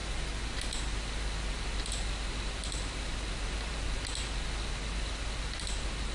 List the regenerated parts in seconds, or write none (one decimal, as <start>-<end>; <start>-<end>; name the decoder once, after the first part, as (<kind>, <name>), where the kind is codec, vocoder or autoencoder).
none